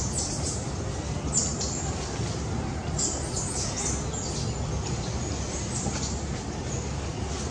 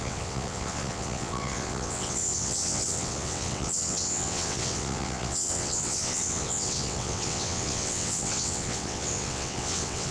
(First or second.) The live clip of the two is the first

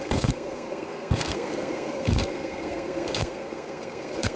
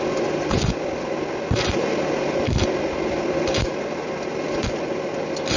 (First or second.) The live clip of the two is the second